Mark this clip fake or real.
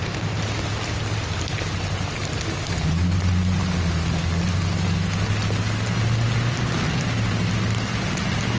real